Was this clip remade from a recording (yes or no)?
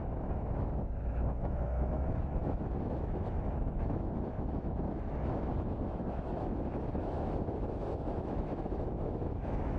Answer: yes